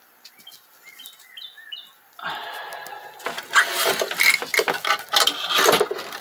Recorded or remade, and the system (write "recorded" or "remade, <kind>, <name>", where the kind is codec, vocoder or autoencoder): recorded